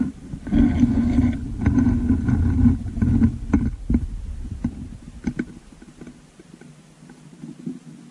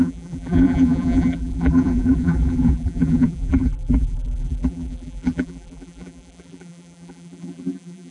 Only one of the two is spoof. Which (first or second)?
second